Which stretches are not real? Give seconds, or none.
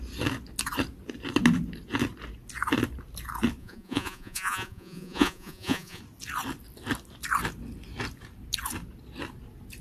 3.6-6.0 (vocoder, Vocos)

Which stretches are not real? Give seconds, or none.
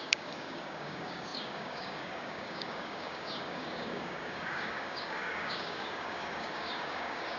0.0-7.4 (codec, DAC)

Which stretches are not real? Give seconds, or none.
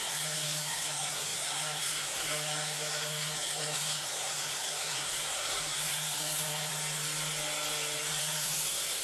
0.0-6.7 (codec, SNAC); 8.2-9.0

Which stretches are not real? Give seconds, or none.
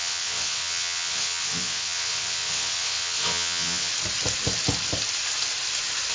0.0-3.9 (vocoder, WaveNeXt)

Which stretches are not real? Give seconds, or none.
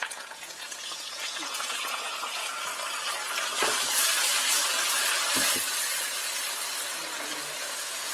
0.0-2.7 (vocoder, Vocos); 7.6-8.1